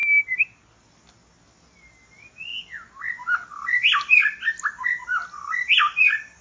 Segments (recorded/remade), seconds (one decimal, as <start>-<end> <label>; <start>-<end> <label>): 0.0-6.4 recorded